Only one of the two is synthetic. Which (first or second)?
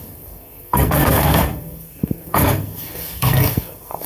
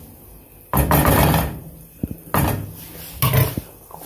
first